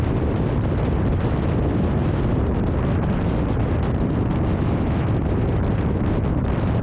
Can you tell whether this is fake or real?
real